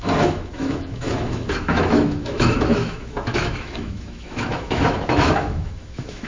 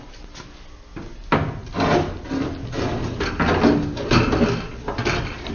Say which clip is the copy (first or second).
first